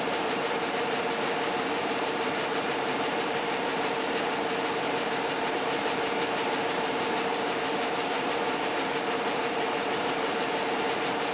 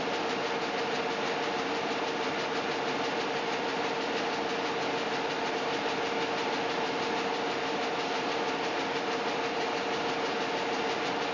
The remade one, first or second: first